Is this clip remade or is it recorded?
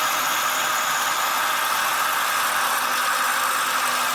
recorded